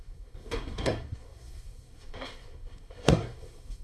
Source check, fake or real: fake